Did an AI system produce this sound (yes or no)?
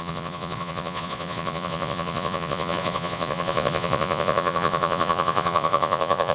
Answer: yes